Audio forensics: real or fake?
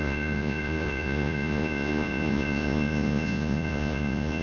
fake